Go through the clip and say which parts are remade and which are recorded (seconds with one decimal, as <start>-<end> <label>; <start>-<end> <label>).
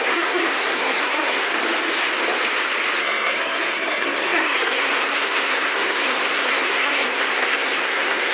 0.0-1.5 remade; 1.5-3.0 recorded; 3.0-8.3 remade